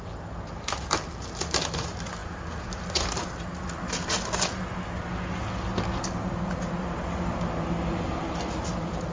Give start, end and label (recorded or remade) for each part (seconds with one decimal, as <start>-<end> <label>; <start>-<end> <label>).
0.0-9.1 recorded

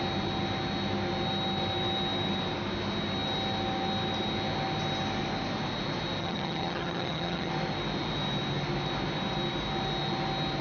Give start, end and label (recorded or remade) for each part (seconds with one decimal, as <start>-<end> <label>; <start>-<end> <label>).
0.0-6.2 recorded; 6.2-7.5 remade; 7.5-10.6 recorded

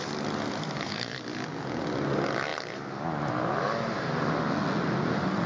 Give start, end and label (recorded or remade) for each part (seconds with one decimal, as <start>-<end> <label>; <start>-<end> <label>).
0.0-0.6 recorded; 0.6-1.2 remade; 1.2-5.5 recorded